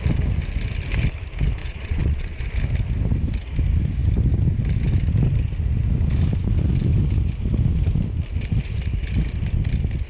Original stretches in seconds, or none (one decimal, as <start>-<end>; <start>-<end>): 0.0-1.6; 2.4-10.1